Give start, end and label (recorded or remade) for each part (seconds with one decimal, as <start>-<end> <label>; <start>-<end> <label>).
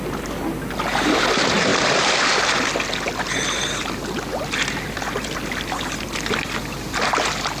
0.0-7.6 recorded